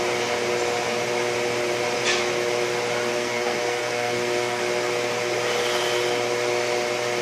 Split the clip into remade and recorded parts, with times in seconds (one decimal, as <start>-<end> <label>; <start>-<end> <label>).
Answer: 0.0-3.1 recorded; 3.1-4.6 remade; 4.6-7.2 recorded